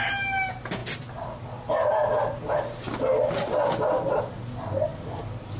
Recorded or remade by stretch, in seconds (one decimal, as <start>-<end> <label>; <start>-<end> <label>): 0.0-5.6 recorded